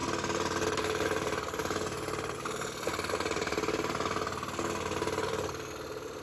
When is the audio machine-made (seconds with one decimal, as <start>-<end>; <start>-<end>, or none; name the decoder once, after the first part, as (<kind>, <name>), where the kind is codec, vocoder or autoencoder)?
none